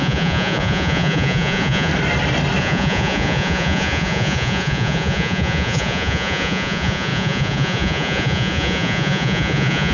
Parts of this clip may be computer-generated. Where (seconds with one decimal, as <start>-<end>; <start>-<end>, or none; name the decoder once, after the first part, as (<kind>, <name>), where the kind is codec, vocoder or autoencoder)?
0.0-1.9 (vocoder, Vocos); 2.6-9.9